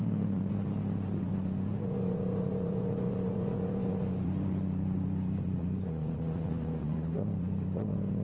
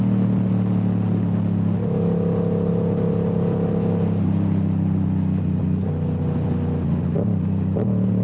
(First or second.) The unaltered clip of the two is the second